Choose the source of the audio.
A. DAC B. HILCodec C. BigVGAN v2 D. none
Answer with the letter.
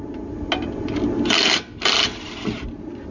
D